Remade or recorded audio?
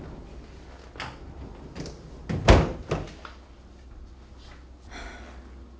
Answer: recorded